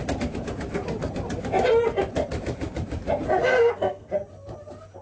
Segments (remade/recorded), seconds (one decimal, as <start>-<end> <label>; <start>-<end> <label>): 0.0-3.5 recorded; 3.5-4.1 remade; 4.1-5.0 recorded